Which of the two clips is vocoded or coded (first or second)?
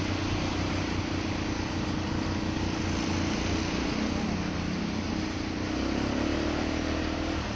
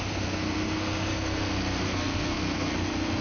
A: second